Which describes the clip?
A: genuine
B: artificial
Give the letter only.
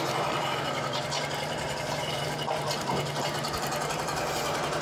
B